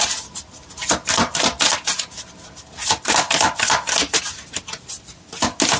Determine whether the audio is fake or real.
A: real